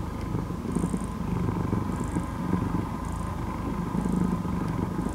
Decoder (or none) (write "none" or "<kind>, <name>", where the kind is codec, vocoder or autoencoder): none